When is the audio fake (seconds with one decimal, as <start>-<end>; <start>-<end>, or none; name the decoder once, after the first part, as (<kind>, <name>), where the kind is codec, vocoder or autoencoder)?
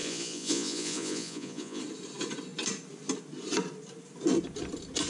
0.0-1.8 (vocoder, Vocos)